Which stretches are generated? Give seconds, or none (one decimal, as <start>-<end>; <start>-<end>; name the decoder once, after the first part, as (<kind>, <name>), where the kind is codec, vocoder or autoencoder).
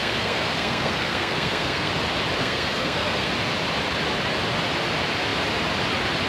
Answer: 0.0-1.9 (codec, SNAC); 2.4-3.3